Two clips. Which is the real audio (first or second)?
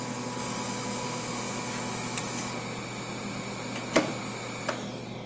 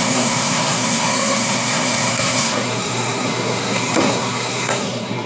first